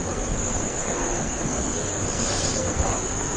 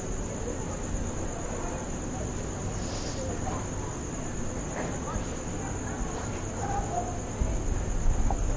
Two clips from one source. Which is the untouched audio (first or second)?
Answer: second